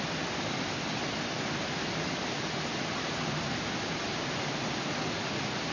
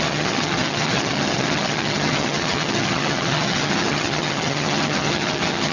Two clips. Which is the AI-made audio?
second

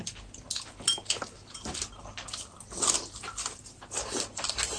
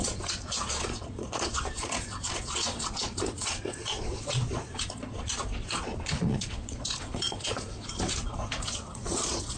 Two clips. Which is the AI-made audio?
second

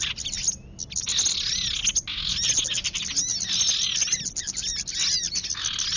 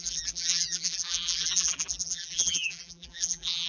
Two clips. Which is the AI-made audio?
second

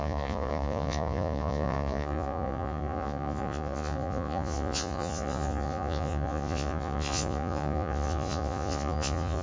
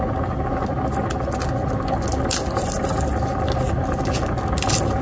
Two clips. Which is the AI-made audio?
first